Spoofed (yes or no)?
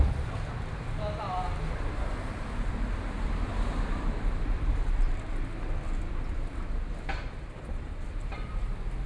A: yes